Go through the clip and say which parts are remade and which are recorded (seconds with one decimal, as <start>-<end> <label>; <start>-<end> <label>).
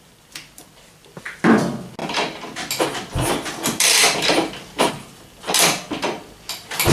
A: 0.0-6.9 recorded